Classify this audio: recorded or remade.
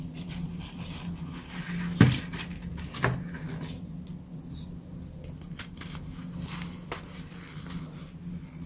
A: recorded